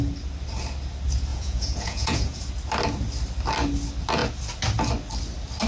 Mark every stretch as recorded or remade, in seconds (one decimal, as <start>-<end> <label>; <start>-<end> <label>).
0.0-1.3 recorded; 1.3-2.4 remade; 2.4-5.7 recorded